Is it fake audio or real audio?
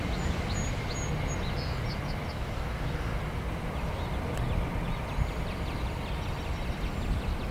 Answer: real